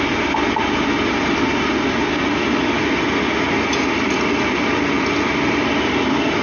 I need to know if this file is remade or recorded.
recorded